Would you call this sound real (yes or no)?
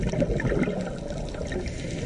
yes